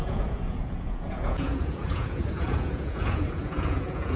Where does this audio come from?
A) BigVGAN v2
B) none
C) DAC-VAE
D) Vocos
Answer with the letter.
D